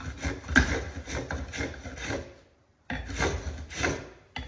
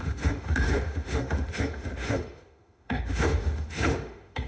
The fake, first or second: second